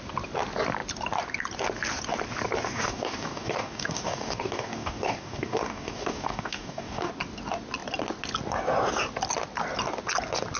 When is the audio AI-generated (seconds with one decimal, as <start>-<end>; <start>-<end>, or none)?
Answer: 2.7-7.1